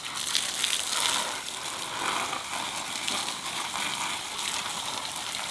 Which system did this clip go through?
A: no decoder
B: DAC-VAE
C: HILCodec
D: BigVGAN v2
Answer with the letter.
A